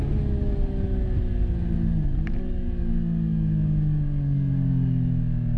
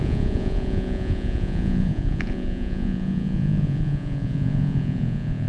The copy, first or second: second